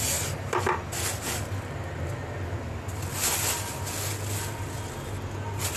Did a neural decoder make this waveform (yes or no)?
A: no